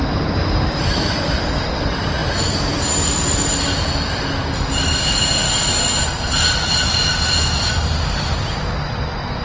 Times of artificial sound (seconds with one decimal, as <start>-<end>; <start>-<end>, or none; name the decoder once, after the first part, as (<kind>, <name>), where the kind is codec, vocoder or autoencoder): none